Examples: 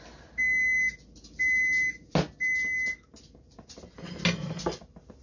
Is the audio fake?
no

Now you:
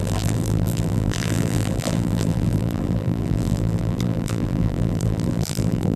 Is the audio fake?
yes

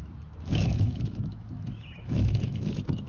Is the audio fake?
yes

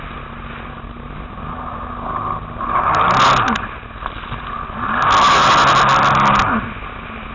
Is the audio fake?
no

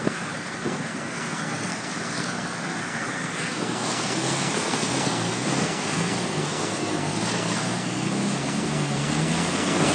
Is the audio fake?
yes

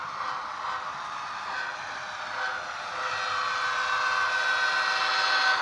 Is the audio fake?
no